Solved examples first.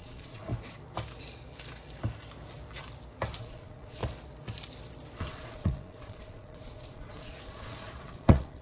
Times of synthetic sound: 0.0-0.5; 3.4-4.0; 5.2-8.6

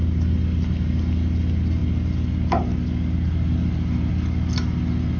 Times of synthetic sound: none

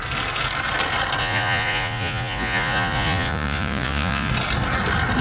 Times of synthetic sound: 1.2-4.3